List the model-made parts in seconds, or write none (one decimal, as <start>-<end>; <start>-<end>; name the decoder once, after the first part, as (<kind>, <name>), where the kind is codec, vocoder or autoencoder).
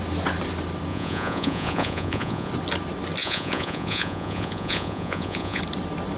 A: 0.9-2.5 (vocoder, Vocos); 3.2-5.6